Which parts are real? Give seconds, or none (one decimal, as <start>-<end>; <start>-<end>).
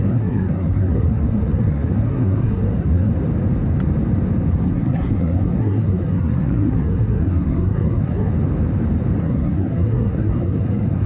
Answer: 3.1-4.5; 8.3-9.2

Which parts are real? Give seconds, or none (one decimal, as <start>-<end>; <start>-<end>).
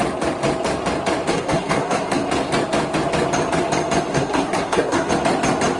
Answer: 0.0-1.3; 2.3-4.1; 5.1-5.8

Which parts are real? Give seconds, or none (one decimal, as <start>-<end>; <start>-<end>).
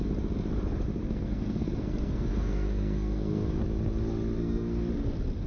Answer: 0.0-1.0; 3.6-4.4; 4.9-5.5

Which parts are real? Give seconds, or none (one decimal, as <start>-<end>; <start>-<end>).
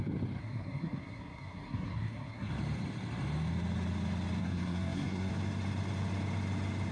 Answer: 0.0-0.4; 2.5-4.4; 5.3-6.9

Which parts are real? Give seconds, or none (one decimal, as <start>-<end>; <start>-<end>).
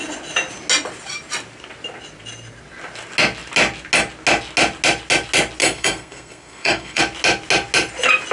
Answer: 0.0-5.6; 7.0-8.3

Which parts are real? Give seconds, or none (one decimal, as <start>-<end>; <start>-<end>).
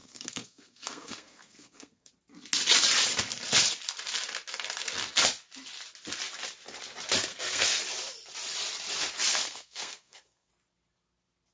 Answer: 2.1-7.3; 7.8-9.3; 10.5-11.5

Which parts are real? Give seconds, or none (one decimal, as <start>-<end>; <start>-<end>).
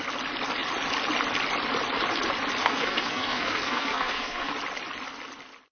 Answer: 0.0-2.6; 4.5-5.7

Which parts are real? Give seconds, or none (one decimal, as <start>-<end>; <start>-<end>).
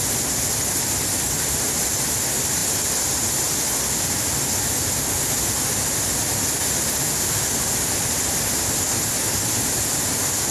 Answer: 0.0-10.5